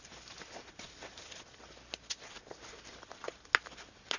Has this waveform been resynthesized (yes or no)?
no